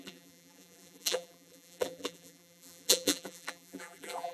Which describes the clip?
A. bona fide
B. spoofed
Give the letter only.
B